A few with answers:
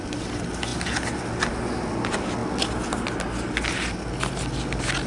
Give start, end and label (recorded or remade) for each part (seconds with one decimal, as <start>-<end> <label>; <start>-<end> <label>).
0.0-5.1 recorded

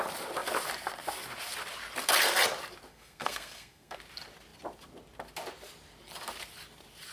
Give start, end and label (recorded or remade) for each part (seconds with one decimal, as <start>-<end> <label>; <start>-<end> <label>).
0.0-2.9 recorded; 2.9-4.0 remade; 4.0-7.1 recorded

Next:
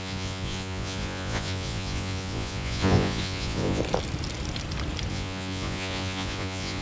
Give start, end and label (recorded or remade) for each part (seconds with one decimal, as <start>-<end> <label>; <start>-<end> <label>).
0.0-3.8 remade; 3.8-5.1 recorded; 5.1-6.8 remade

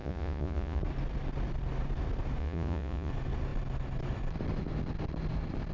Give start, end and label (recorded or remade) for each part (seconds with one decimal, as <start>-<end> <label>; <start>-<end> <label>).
0.0-0.8 remade; 0.8-2.4 recorded; 2.4-3.1 remade; 3.1-5.7 recorded

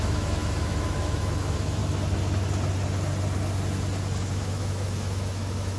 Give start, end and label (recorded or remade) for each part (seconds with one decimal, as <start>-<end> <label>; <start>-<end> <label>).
0.0-1.8 remade; 1.8-4.3 recorded; 4.3-5.8 remade

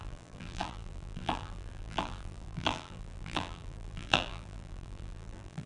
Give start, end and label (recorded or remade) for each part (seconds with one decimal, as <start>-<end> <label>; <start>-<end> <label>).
0.0-5.7 remade